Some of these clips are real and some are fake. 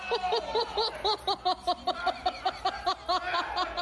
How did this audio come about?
real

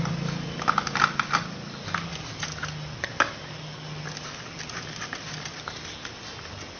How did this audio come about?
real